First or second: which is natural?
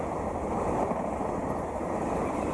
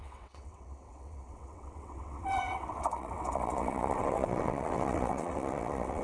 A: first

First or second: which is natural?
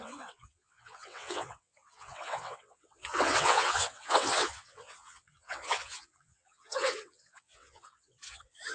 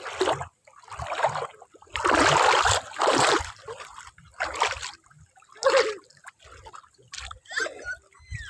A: second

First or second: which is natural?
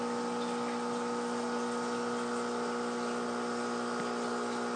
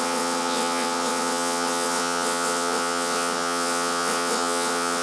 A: first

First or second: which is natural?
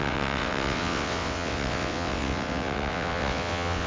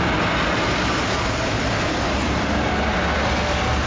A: second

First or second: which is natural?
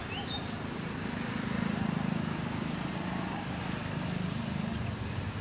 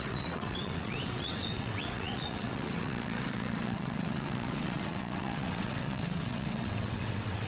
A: first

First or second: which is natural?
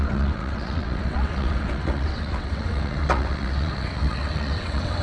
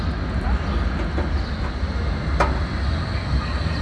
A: second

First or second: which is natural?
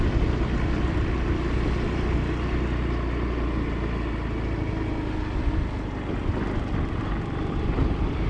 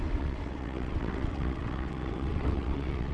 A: first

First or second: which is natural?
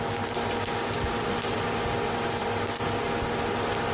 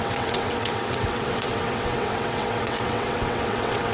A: first